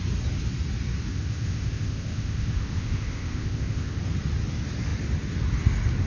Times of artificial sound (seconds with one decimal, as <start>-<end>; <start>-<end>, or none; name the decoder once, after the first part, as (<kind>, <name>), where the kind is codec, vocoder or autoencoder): 1.1-4.0 (codec, ZipCodec)